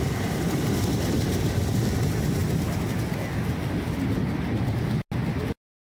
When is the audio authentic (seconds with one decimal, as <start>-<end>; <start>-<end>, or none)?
0.0-6.0